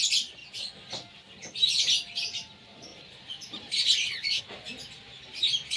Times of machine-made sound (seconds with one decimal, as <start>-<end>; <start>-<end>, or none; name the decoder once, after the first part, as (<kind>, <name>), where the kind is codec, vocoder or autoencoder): none